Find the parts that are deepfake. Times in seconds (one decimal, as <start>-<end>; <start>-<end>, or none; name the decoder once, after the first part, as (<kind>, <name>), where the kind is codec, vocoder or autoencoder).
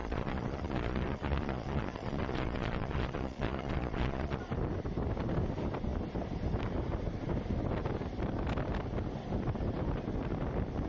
0.0-4.4 (vocoder, Vocos)